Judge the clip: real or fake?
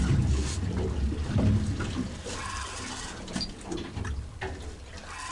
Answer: real